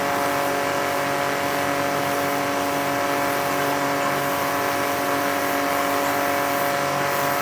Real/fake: real